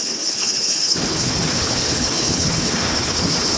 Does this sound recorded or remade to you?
remade